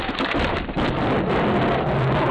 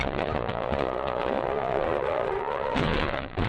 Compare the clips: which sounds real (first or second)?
first